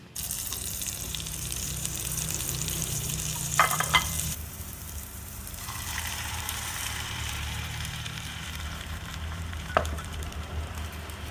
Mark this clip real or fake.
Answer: fake